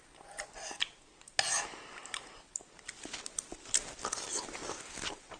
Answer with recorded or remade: recorded